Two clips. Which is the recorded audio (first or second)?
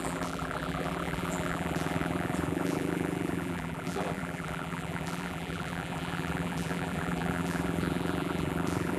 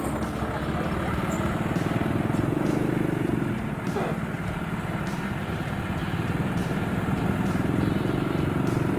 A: second